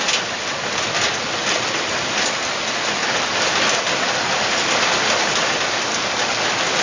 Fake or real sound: real